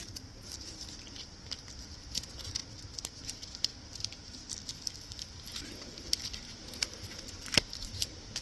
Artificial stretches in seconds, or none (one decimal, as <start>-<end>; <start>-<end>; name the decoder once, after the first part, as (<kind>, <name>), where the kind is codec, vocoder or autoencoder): none